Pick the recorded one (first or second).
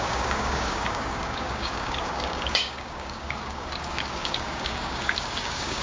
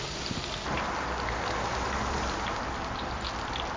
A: second